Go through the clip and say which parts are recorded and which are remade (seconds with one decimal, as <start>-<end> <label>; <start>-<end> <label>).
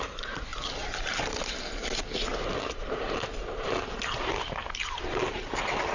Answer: 0.0-5.9 recorded